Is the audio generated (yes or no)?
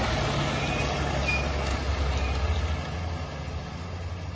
no